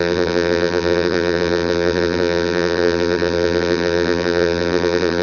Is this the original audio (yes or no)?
no